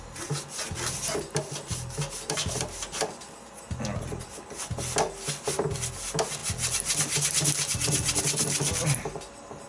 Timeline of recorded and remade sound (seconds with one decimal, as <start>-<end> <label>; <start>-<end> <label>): 0.0-9.7 recorded